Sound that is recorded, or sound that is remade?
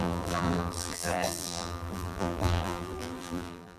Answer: remade